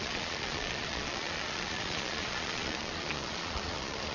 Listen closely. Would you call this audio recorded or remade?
remade